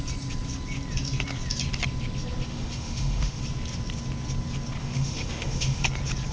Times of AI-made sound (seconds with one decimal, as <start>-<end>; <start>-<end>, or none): 2.5-3.4; 4.8-5.8